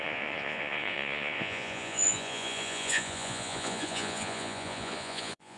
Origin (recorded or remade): remade